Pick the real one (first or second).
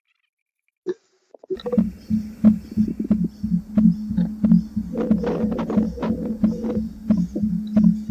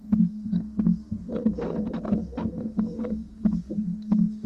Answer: first